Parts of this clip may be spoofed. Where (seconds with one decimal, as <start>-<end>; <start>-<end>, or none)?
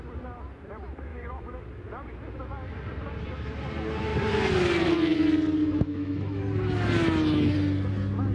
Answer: 1.1-1.6; 5.6-6.4